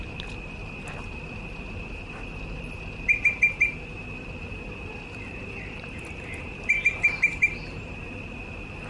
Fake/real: fake